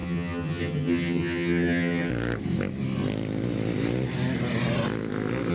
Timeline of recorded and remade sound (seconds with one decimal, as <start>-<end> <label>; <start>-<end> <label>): 0.0-2.1 remade; 2.1-5.5 recorded